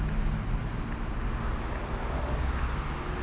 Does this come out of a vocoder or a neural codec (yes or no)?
no